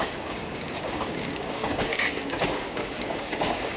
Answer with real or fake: fake